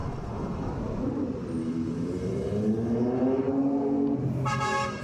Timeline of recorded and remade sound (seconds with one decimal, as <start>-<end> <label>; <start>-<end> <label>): 0.0-0.7 remade; 0.7-1.6 recorded; 1.6-3.4 remade; 3.4-5.0 recorded

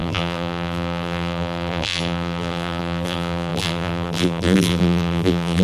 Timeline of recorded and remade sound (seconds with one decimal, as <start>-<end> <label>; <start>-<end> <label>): 0.0-5.6 remade

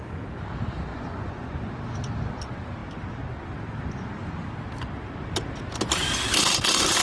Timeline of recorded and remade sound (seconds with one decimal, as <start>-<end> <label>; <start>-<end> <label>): 0.0-0.9 recorded; 0.9-1.7 remade; 1.7-7.0 recorded

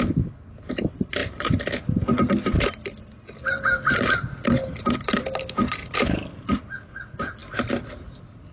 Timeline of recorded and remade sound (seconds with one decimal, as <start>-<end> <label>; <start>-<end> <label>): 0.0-8.5 recorded

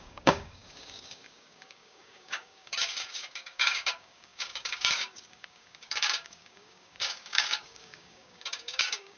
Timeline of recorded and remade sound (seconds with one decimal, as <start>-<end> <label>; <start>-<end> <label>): 0.0-9.2 remade

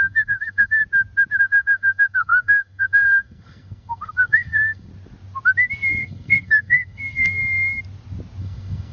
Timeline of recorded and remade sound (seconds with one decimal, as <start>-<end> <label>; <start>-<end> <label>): 0.0-0.8 remade; 0.8-1.4 recorded; 1.4-4.9 remade; 4.9-5.9 recorded; 5.9-7.4 remade; 7.4-8.4 recorded; 8.4-8.9 remade